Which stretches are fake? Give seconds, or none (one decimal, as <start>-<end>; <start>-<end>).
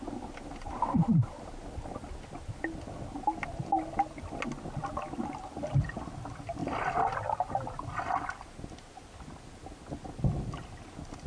none